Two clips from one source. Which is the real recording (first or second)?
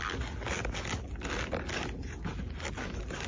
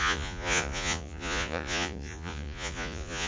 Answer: first